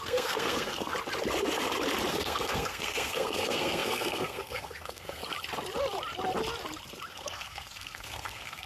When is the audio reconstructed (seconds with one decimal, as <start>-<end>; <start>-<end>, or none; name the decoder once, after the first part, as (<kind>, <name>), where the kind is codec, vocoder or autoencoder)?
0.0-0.9 (codec, SNAC); 2.1-5.2; 7.1-8.7